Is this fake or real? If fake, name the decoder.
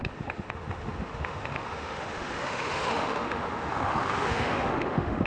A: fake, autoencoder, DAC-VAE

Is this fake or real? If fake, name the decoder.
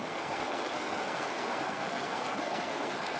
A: fake, codec, SNAC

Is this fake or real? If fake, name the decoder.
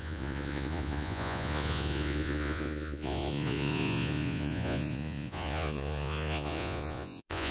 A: fake, vocoder, Vocos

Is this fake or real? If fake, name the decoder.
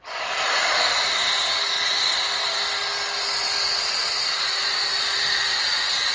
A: real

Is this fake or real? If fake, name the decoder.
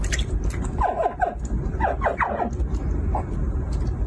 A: real